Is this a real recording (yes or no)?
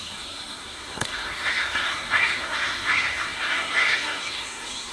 no